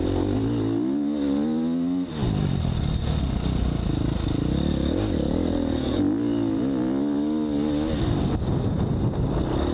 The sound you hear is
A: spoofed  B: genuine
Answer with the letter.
B